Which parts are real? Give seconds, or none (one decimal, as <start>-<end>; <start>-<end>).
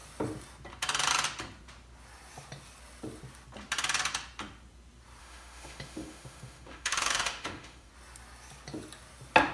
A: 0.0-5.2; 7.9-9.5